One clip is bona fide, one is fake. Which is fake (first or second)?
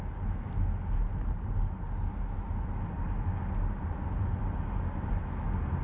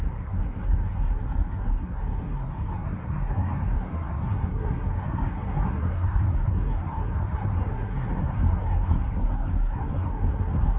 second